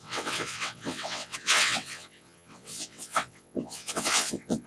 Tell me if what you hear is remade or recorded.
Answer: remade